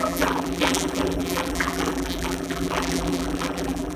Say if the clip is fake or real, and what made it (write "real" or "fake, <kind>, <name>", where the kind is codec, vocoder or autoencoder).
fake, vocoder, BigVGAN v2